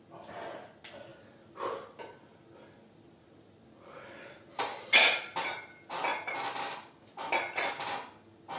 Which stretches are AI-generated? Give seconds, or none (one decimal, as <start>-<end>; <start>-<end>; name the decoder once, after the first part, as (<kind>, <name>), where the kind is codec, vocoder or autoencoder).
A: 1.1-4.6 (vocoder, BigVGAN v2); 6.1-7.3